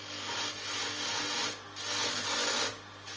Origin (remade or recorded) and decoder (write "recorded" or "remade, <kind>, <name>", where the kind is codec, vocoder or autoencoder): recorded